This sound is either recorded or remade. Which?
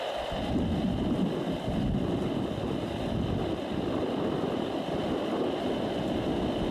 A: recorded